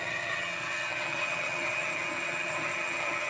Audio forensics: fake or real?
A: fake